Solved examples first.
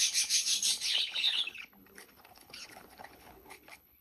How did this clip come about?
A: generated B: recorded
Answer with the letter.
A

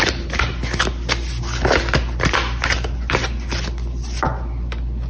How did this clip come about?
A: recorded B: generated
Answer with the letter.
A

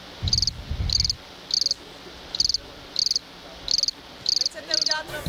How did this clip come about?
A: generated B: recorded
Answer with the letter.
B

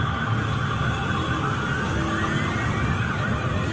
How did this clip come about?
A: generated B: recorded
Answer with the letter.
B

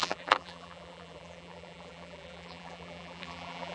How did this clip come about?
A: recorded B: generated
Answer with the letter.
B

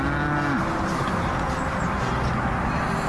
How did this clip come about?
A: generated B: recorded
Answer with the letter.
B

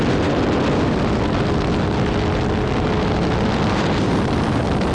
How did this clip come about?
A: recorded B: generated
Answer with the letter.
A